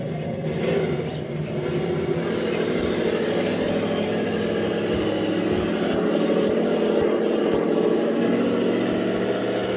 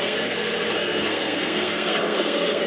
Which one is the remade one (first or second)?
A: second